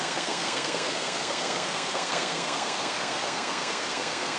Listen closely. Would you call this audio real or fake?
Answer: fake